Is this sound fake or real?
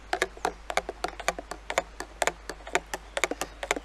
real